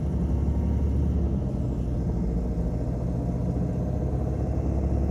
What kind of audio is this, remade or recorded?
recorded